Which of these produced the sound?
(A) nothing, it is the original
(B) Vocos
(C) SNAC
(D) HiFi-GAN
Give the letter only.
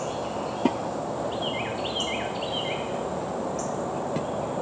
A